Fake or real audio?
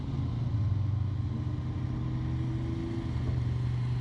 real